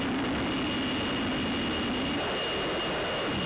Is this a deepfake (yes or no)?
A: no